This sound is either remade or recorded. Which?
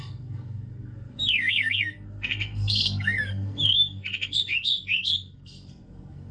remade